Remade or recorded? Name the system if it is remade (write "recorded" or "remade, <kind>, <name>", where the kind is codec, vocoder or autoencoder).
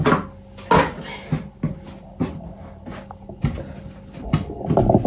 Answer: recorded